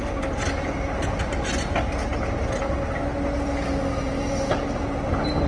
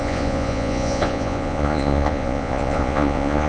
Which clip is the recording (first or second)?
first